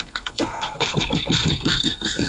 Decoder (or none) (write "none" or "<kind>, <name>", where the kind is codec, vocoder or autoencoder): codec, SNAC